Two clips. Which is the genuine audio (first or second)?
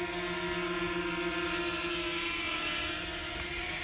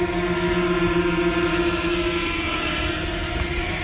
first